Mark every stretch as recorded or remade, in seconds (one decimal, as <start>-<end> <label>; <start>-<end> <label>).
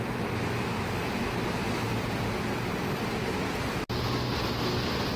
0.0-5.2 recorded